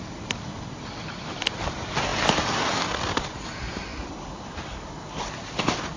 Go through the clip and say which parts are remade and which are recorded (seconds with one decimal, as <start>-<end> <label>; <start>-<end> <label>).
0.0-6.0 recorded